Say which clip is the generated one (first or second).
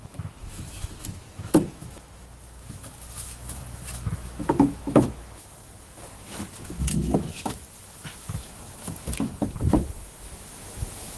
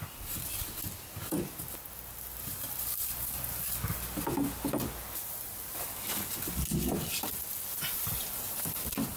first